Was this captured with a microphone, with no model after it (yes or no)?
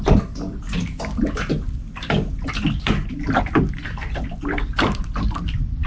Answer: yes